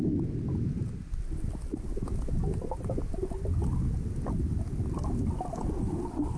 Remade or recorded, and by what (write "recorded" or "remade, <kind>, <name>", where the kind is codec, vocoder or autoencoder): recorded